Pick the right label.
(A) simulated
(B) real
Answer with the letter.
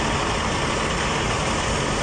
B